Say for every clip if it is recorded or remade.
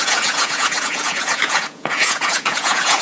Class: remade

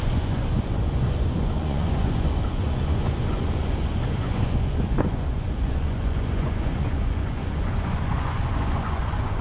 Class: remade